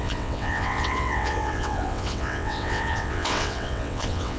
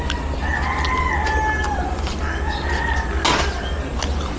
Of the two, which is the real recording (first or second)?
second